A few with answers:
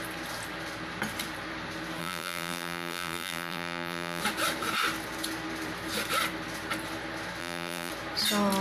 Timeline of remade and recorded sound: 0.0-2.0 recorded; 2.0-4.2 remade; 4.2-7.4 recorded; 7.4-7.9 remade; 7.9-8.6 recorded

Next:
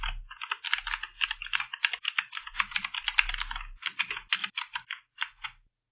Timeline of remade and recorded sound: 0.0-2.3 recorded; 2.3-3.3 remade; 3.3-5.9 recorded